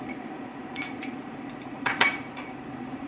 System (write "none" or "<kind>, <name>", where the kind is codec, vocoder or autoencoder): vocoder, Vocos